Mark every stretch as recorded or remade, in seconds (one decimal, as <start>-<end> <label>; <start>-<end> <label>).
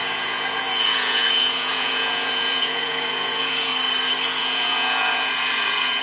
0.0-3.7 remade; 3.7-4.4 recorded; 4.4-6.0 remade